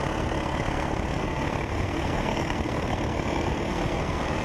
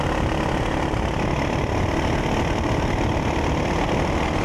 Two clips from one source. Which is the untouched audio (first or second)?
second